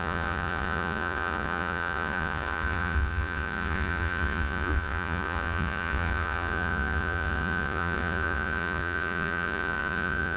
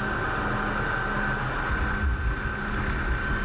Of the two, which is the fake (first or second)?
first